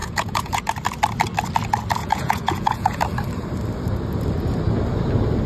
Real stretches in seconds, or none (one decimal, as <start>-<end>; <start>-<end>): 0.6-2.0; 3.0-5.5